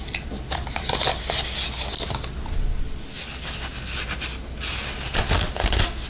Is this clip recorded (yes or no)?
yes